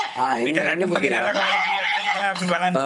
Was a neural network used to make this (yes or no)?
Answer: yes